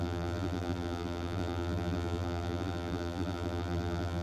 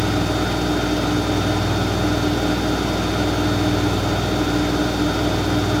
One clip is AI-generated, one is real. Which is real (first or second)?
second